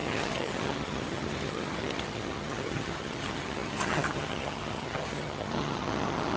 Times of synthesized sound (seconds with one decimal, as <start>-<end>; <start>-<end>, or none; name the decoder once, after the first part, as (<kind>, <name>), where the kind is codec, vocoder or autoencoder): 0.0-6.4 (vocoder, HiFi-GAN)